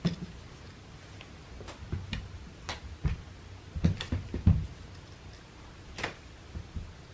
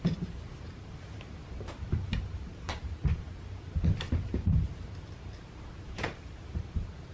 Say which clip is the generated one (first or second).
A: second